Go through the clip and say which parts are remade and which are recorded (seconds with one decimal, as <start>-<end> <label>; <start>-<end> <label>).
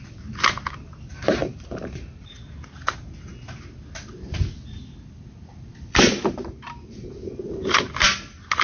0.0-1.4 recorded; 1.4-2.3 remade; 2.3-5.5 recorded; 5.5-7.9 remade; 7.9-8.6 recorded